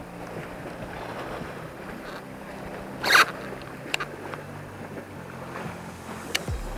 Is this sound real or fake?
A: real